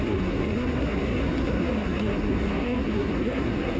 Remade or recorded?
remade